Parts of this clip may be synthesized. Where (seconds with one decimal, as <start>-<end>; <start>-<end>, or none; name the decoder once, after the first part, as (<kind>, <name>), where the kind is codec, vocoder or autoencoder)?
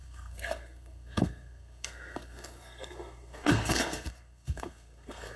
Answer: 0.0-5.4 (codec, SNAC)